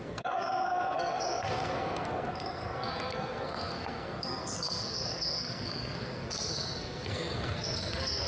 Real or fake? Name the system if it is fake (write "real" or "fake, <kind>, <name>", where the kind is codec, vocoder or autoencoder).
fake, codec, SNAC